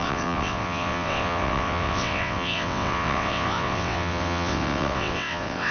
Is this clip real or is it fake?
fake